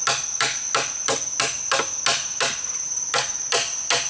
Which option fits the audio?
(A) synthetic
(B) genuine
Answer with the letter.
B